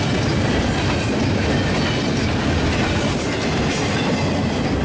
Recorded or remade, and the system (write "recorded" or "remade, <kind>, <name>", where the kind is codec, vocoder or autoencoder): recorded